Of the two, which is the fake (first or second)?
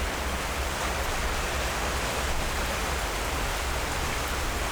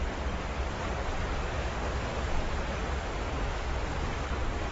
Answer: second